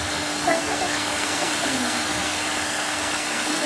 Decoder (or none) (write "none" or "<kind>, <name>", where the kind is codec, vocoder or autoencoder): codec, SNAC